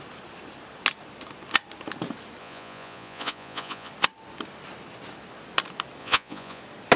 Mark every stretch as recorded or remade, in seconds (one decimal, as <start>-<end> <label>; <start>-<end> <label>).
0.0-2.4 recorded; 2.4-3.9 remade; 3.9-6.0 recorded; 6.0-6.6 remade; 6.6-7.0 recorded